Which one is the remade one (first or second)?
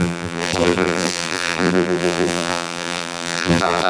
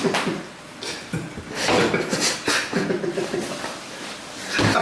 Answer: first